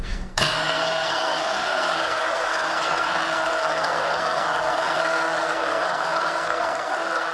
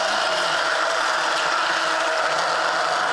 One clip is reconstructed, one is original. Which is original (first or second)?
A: second